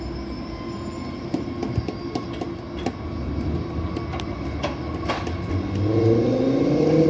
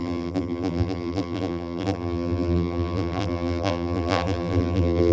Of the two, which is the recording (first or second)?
first